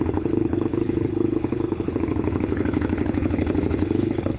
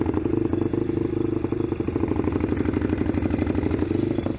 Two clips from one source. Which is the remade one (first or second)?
first